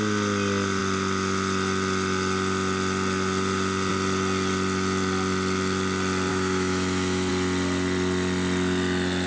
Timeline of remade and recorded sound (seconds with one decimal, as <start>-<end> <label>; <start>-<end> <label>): 0.0-6.3 recorded; 6.3-7.3 remade; 7.3-9.3 recorded